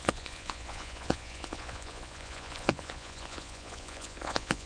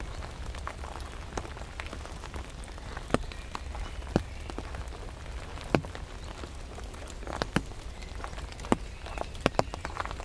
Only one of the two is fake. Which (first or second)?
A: first